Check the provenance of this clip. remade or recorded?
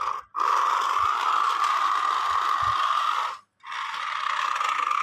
recorded